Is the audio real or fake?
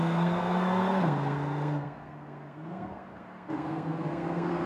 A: fake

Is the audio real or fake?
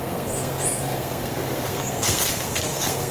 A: fake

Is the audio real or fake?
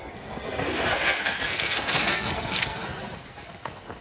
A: fake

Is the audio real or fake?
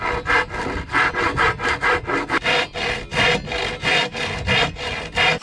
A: real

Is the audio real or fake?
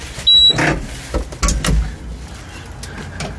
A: real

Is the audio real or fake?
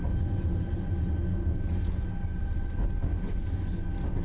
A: real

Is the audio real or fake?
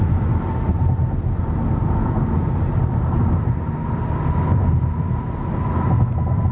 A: real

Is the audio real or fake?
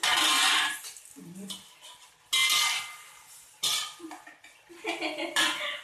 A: real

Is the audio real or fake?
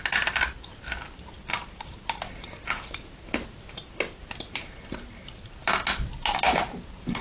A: real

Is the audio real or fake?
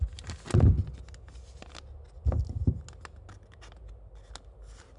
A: real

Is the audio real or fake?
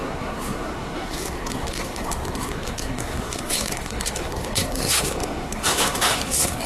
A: fake